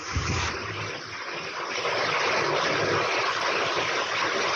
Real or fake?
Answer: real